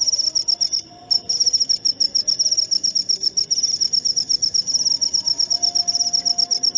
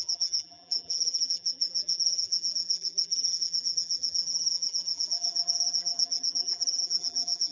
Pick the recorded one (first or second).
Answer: first